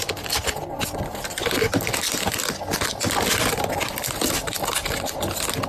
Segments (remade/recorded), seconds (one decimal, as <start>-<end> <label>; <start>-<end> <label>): 0.0-5.7 recorded

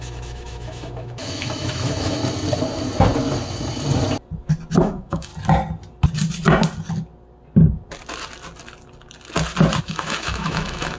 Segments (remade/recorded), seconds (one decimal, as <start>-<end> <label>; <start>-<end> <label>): 0.0-2.2 remade; 2.2-4.8 recorded; 4.8-5.3 remade; 5.3-9.8 recorded; 9.8-11.0 remade

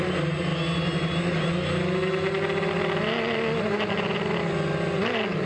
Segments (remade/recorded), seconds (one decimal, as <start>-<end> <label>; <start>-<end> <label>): 0.0-5.5 recorded